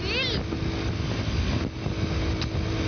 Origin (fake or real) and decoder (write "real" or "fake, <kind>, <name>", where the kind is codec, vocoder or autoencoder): real